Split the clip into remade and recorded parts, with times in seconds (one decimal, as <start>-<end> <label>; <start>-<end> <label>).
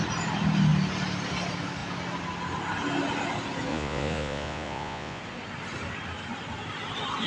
0.0-3.7 recorded; 3.7-5.2 remade; 5.2-7.3 recorded